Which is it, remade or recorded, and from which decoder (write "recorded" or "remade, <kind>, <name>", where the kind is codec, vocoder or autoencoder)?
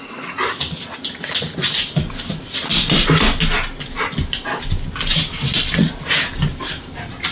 recorded